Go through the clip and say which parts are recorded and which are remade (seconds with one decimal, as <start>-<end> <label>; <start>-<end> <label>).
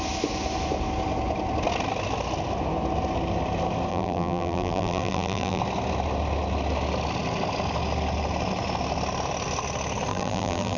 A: 0.0-3.9 recorded; 3.9-5.6 remade; 5.6-10.1 recorded; 10.1-10.8 remade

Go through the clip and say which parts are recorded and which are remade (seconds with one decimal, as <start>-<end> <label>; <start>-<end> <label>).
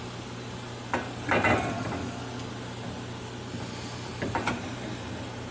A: 0.0-4.1 recorded; 4.1-5.5 remade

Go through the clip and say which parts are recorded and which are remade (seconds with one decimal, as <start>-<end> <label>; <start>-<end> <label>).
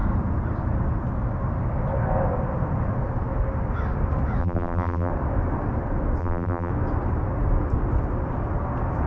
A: 0.0-4.4 recorded; 4.4-5.1 remade; 5.1-6.2 recorded; 6.2-6.7 remade; 6.7-9.1 recorded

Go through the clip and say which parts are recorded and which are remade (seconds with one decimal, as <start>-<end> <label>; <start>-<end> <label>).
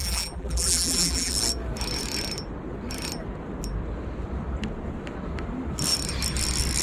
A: 0.0-1.3 remade; 1.3-6.8 recorded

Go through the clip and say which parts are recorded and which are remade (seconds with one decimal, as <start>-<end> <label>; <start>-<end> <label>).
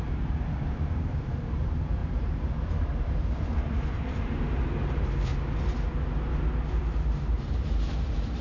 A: 0.0-2.0 remade; 2.0-2.8 recorded; 2.8-5.3 remade; 5.3-6.8 recorded; 6.8-8.4 remade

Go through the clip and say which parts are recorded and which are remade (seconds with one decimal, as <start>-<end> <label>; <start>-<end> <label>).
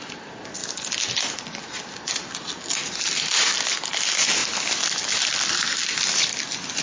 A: 0.0-6.8 remade